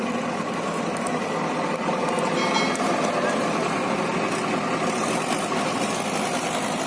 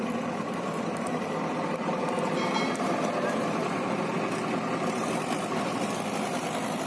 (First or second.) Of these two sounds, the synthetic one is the second